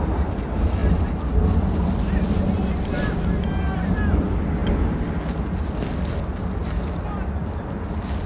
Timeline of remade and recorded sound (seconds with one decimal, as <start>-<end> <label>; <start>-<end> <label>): 0.0-8.3 recorded